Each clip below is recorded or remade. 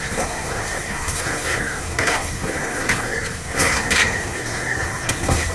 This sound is remade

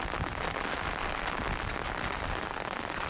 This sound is recorded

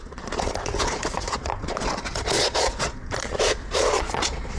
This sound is remade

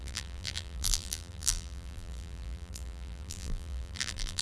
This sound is remade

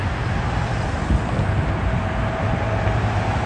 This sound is recorded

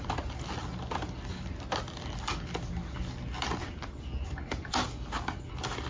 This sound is recorded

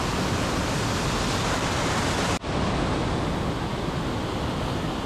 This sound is recorded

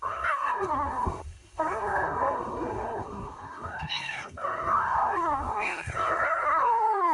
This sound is remade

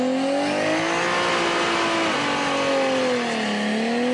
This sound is recorded